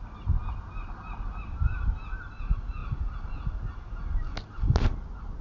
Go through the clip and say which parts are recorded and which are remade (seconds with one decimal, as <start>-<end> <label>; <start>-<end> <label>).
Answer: 0.0-2.8 recorded; 2.8-3.4 remade; 3.4-5.4 recorded